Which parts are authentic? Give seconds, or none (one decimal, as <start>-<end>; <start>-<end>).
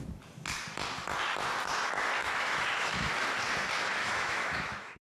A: 0.0-2.2; 3.1-4.0